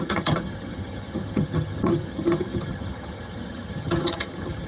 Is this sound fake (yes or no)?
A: yes